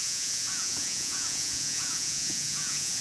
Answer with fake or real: fake